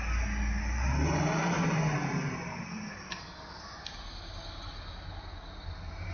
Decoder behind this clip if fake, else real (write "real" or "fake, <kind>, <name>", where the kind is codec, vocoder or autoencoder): real